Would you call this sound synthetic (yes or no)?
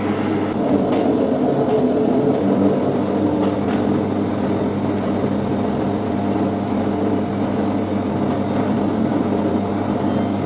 no